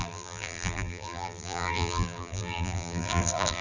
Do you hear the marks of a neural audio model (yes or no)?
yes